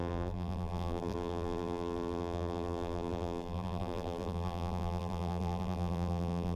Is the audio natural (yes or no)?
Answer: no